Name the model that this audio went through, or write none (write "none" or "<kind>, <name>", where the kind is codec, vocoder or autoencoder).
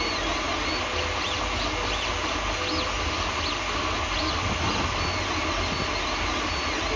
none